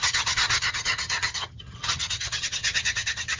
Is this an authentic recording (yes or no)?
no